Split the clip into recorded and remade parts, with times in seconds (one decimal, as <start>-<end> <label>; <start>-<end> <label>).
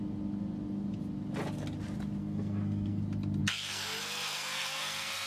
0.0-2.2 recorded; 2.2-3.0 remade; 3.0-3.4 recorded; 3.4-5.3 remade